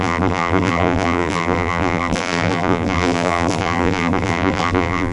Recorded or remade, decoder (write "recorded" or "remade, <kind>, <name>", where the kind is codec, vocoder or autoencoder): remade, vocoder, BigVGAN v2